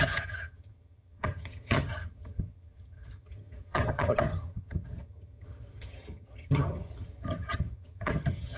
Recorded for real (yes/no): no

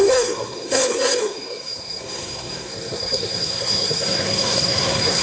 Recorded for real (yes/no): no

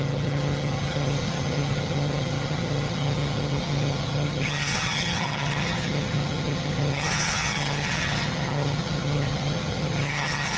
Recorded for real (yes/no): no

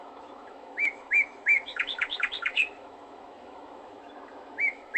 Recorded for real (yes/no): no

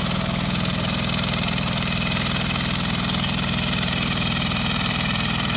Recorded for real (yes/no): no